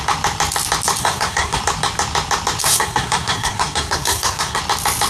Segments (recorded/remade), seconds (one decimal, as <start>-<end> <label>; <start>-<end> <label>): 0.0-1.0 recorded; 1.0-1.6 remade; 1.6-2.6 recorded; 2.6-4.6 remade; 4.6-5.1 recorded